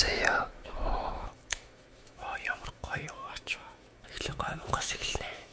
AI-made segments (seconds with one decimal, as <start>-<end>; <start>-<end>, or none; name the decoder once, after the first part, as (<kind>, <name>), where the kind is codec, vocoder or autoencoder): 0.0-5.5 (autoencoder, DAC-VAE)